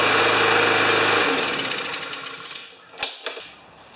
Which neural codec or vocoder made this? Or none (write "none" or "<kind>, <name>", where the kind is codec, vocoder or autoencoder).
none